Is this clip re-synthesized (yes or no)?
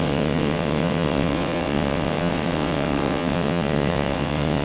yes